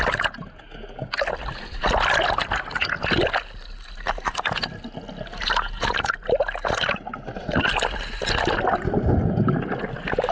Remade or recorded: recorded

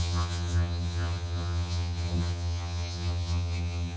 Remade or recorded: remade